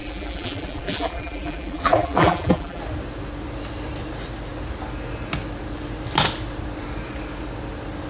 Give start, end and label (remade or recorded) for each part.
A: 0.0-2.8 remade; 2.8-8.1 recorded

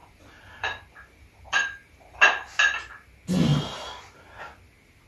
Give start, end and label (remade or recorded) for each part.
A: 0.0-2.2 remade; 2.2-5.1 recorded

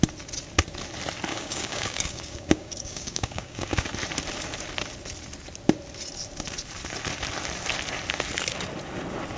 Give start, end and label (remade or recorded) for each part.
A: 0.0-1.3 recorded; 1.3-3.9 remade; 3.9-9.4 recorded